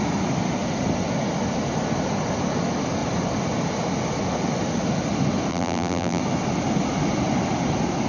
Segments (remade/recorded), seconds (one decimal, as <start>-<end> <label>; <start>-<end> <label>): 0.0-5.5 recorded; 5.5-6.2 remade; 6.2-8.1 recorded